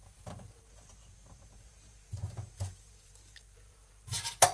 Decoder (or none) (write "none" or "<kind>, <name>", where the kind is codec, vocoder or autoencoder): vocoder, BigVGAN v2